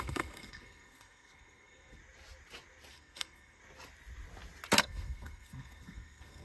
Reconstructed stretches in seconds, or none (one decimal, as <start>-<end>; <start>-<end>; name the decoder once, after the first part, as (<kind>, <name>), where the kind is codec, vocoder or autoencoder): 0.0-2.0 (codec, SNAC); 2.9-3.6; 4.8-6.4

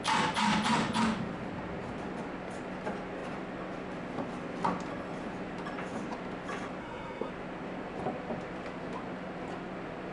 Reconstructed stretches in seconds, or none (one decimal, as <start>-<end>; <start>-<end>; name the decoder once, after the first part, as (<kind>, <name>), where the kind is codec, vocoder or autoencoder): 6.8-7.3 (codec, SNAC)

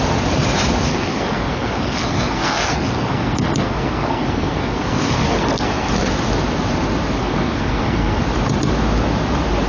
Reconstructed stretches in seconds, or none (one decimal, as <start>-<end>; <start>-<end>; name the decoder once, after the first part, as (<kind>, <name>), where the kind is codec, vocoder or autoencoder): 0.9-5.9 (codec, SNAC); 7.2-8.2

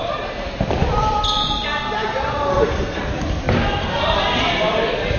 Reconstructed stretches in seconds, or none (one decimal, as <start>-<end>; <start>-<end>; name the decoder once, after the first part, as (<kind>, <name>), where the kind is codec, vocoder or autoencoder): 2.5-3.0 (codec, SNAC)